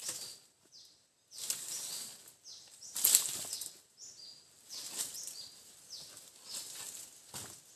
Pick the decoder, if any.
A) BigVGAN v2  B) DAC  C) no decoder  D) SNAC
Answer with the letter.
C